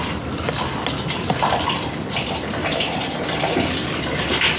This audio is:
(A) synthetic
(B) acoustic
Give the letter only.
A